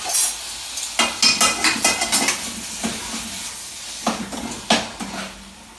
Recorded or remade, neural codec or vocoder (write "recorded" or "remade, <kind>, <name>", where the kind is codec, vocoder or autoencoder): recorded